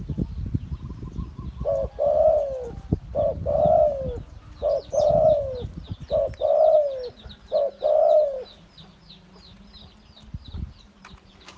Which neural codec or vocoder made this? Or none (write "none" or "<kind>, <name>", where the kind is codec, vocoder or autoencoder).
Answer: none